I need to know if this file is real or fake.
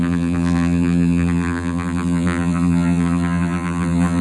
fake